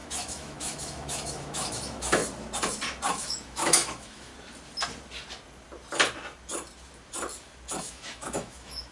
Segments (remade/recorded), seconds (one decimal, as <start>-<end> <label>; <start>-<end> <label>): 0.0-2.2 remade; 2.2-3.1 recorded; 3.1-4.3 remade; 4.3-7.8 recorded; 7.8-8.9 remade